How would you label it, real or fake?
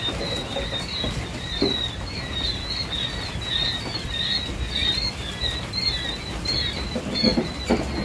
real